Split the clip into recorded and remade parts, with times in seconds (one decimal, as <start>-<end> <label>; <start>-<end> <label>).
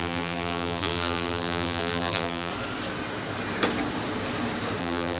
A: 0.0-2.5 remade; 2.5-4.8 recorded; 4.8-5.2 remade